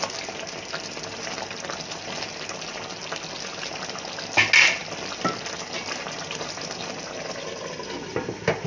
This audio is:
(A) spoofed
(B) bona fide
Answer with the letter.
B